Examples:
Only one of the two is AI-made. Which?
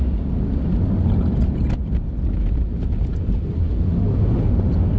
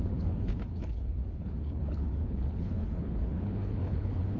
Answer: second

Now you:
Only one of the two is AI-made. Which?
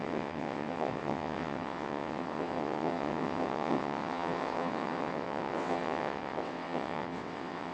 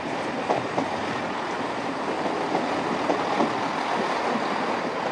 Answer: first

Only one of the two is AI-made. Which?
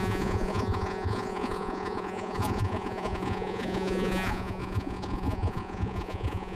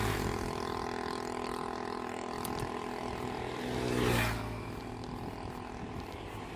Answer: first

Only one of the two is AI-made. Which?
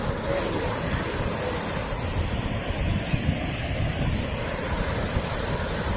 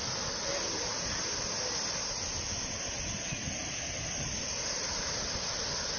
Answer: first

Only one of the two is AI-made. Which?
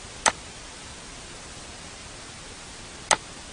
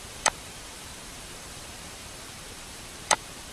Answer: second